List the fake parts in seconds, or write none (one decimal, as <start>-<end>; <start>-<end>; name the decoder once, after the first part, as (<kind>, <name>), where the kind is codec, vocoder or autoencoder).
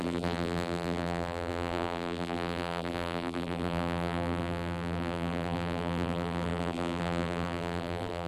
0.0-8.3 (vocoder, BigVGAN v2)